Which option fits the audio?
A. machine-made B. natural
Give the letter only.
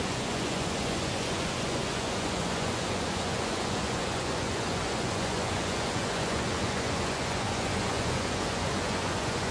A